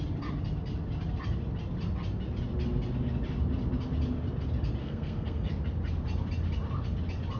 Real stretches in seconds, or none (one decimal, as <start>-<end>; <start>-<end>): 0.0-4.8; 5.5-7.4